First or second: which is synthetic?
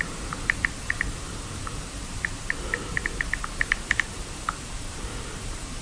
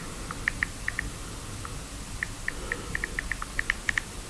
first